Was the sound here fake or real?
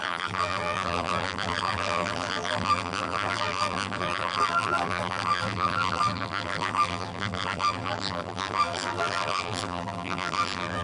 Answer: fake